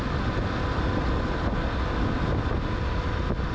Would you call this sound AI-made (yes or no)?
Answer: no